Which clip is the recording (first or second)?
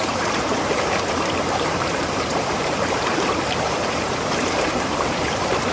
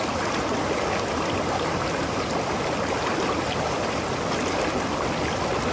second